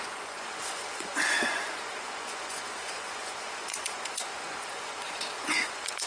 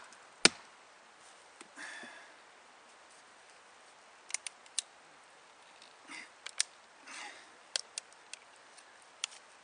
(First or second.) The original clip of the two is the second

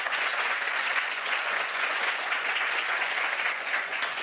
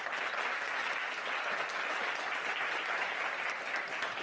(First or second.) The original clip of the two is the second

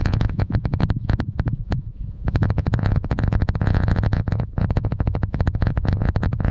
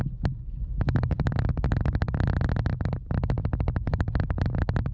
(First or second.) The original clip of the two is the second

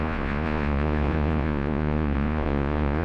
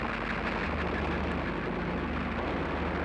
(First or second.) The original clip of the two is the second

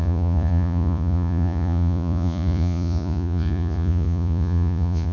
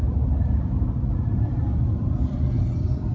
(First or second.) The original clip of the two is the second